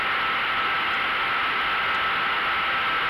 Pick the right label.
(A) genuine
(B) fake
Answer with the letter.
A